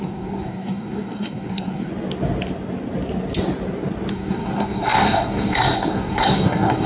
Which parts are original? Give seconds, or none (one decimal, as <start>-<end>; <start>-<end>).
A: 1.9-4.1